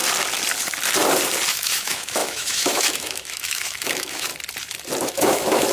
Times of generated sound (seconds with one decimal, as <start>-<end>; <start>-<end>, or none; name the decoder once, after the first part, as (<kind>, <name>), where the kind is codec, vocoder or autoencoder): 1.5-4.3 (autoencoder, DAC-VAE); 5.1-5.7